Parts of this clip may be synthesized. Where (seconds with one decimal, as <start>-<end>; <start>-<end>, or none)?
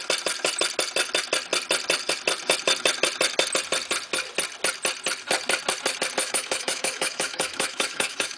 6.2-8.4